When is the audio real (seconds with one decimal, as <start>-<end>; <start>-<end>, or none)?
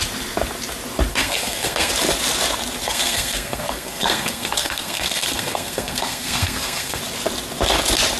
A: 0.0-1.1; 1.9-2.8; 7.0-8.2